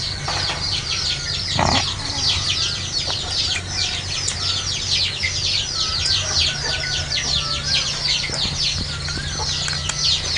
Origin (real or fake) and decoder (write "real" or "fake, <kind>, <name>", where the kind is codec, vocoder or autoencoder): real